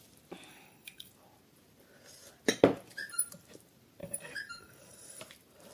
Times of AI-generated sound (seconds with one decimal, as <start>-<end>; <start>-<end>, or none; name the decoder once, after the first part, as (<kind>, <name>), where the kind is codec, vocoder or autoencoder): 0.5-1.1 (codec, DAC); 4.0-5.2